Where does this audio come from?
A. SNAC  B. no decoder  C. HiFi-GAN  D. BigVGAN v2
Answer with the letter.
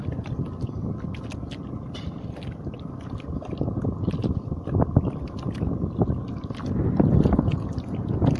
B